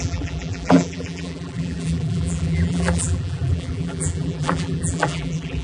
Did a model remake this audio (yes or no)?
yes